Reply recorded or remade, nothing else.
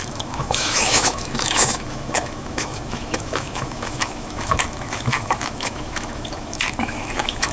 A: remade